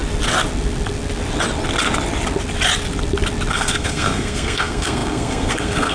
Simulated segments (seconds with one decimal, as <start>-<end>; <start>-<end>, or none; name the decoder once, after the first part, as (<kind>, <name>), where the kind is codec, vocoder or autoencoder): 3.5-5.9 (codec, SNAC)

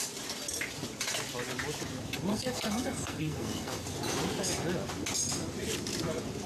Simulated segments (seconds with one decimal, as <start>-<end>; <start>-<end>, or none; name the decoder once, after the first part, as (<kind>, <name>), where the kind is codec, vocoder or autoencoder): 2.3-3.9 (codec, SNAC)

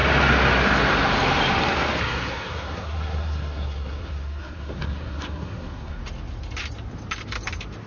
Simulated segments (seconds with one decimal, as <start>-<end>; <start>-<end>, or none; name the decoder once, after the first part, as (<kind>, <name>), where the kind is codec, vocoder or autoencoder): 2.0-6.0 (codec, SNAC)